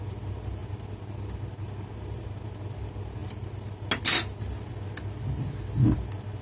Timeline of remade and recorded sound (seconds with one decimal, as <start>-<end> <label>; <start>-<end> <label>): 0.0-6.4 recorded